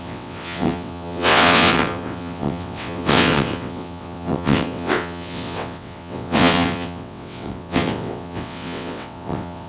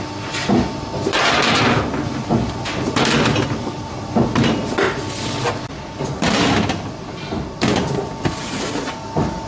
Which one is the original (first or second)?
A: second